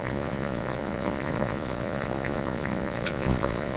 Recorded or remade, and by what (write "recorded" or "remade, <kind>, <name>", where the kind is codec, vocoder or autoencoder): remade, vocoder, Vocos